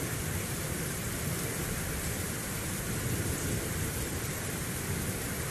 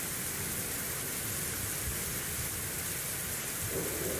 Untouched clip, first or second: second